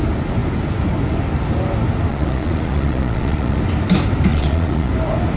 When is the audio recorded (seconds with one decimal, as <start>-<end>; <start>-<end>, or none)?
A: 0.0-2.1; 3.6-4.3; 4.9-5.4